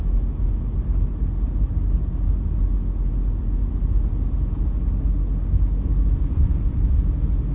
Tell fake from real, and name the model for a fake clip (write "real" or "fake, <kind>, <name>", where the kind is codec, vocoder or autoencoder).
real